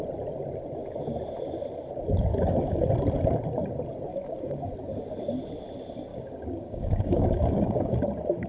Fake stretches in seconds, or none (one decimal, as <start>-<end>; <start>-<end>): 2.3-2.8; 4.1-4.7; 6.1-8.0